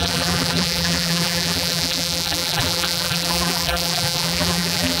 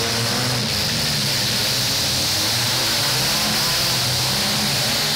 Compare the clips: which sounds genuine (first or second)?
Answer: second